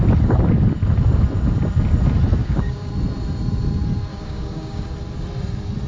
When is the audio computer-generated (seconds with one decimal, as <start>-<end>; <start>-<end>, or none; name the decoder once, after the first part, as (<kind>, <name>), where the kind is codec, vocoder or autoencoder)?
2.4-2.9 (codec, DAC); 4.1-4.8